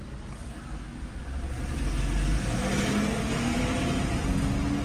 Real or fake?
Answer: real